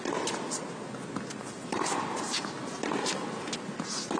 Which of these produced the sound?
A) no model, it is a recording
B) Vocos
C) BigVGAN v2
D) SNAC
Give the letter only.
A